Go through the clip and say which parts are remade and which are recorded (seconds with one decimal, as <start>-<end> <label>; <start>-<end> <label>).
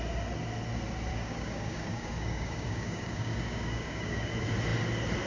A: 0.0-1.1 recorded; 1.1-4.3 remade; 4.3-5.3 recorded